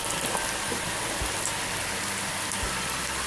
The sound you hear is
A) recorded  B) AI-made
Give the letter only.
A